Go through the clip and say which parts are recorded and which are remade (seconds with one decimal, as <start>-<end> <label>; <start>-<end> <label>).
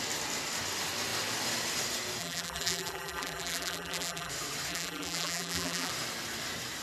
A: 0.0-2.2 recorded; 2.2-4.3 remade; 4.3-4.7 recorded; 4.7-5.9 remade; 5.9-6.8 recorded